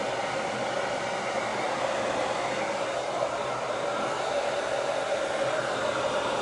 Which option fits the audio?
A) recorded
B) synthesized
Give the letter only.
A